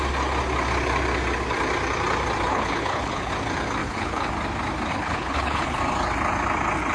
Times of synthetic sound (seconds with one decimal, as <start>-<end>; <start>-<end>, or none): 2.5-3.3; 3.8-4.3; 4.9-5.8